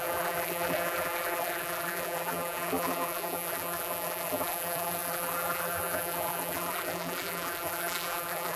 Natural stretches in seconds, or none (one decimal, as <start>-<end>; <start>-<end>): none